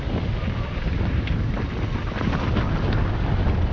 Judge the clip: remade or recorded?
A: recorded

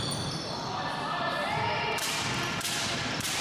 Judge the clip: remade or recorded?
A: recorded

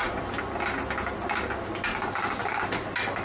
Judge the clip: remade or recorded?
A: recorded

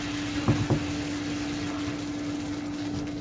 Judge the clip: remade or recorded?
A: recorded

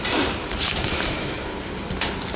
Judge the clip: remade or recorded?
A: remade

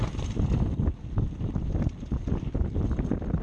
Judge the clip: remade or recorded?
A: recorded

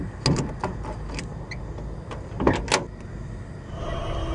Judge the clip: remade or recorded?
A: recorded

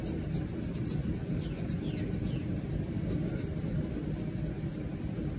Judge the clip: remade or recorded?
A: recorded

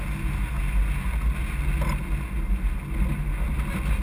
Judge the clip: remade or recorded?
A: recorded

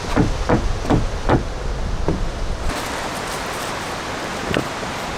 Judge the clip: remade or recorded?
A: recorded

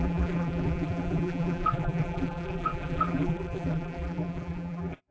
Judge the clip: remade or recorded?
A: remade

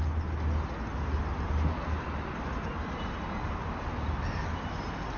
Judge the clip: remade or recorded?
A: recorded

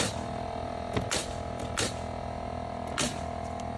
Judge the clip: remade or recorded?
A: recorded